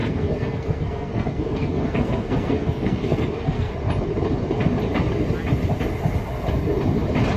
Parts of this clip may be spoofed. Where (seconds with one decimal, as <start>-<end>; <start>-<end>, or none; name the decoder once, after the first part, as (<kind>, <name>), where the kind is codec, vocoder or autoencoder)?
0.0-3.7 (codec, SNAC)